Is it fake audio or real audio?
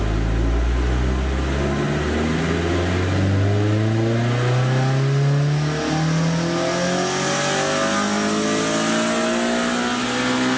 real